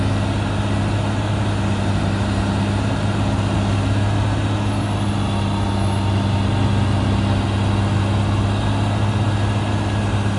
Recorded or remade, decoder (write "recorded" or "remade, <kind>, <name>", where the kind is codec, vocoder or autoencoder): recorded